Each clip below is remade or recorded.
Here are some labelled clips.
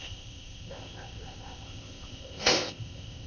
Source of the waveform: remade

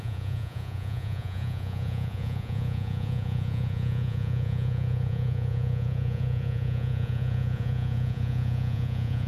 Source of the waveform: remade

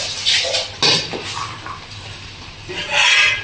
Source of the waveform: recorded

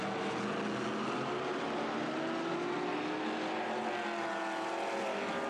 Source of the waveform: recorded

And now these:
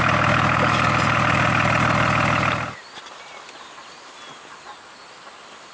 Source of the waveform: recorded